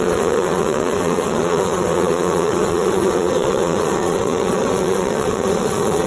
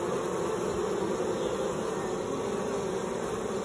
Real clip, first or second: second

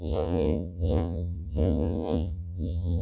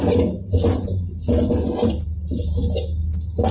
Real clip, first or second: second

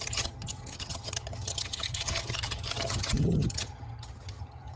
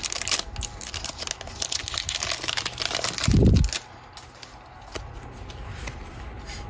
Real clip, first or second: second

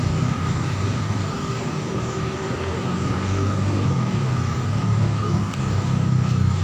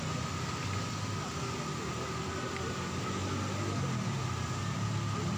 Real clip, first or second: second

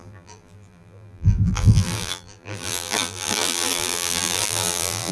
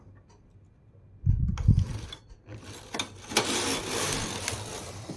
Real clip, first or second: second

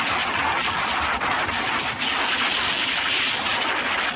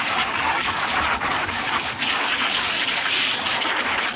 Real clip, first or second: first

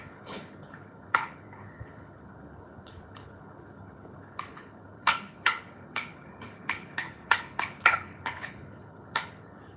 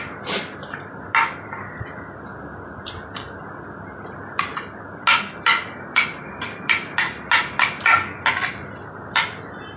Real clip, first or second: second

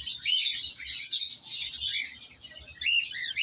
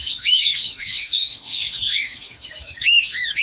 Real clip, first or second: first